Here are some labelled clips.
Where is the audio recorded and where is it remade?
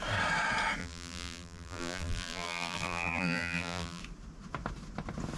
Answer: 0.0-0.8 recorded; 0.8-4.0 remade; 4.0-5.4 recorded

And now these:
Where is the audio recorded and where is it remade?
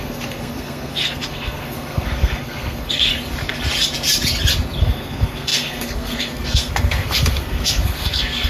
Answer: 0.0-3.1 remade; 3.1-4.8 recorded; 4.8-8.5 remade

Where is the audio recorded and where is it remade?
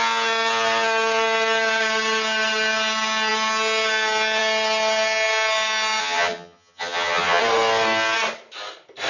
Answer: 0.0-6.0 recorded; 6.0-7.4 remade; 7.4-9.1 recorded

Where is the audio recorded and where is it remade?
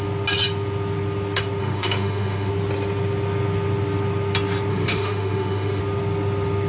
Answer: 0.0-1.6 recorded; 1.6-2.5 remade; 2.5-4.7 recorded; 4.7-5.8 remade; 5.8-6.7 recorded